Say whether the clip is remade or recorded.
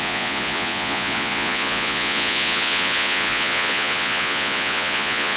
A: remade